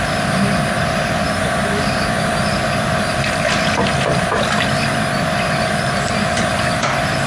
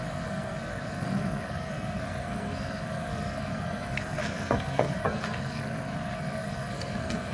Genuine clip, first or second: first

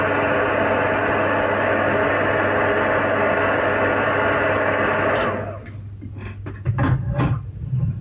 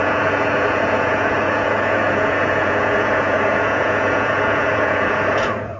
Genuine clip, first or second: first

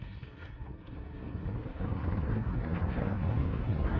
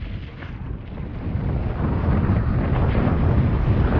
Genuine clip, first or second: second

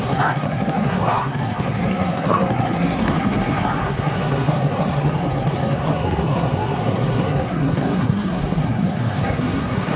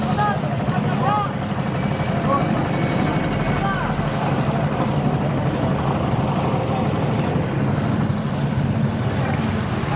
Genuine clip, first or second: second